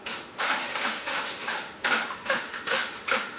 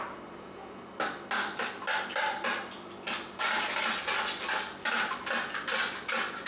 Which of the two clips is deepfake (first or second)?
first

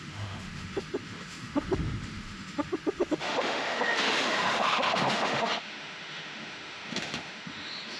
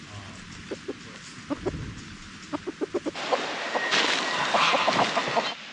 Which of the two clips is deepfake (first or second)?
first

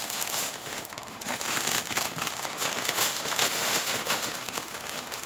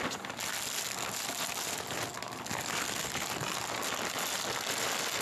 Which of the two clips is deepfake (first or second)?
first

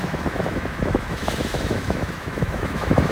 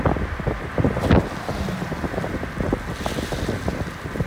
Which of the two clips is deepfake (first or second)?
first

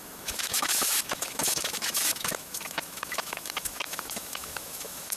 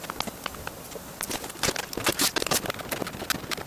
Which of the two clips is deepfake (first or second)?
first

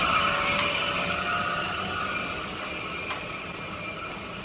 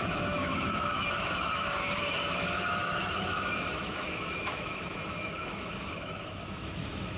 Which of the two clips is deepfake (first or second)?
second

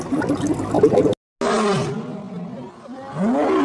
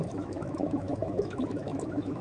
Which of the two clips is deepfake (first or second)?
second